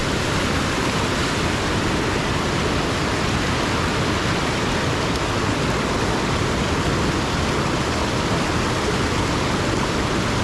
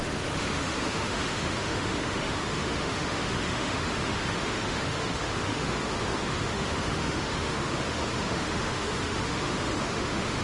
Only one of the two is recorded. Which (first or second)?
first